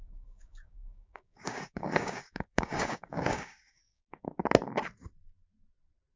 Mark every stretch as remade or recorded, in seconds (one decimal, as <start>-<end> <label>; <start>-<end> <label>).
0.0-4.4 remade; 4.4-6.2 recorded